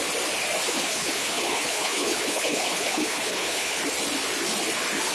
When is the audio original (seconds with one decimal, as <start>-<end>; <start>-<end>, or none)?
0.0-0.7; 3.8-5.1